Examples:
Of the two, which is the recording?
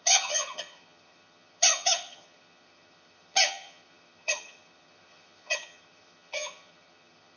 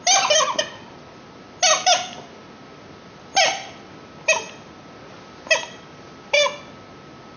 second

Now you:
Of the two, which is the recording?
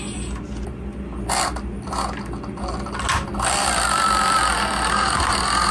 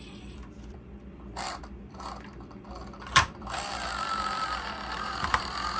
first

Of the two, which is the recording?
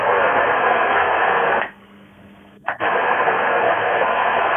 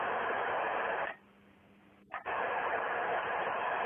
second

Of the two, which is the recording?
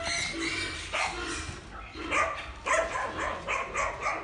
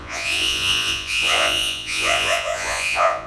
first